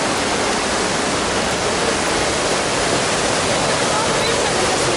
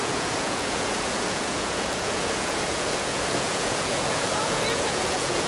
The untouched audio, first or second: first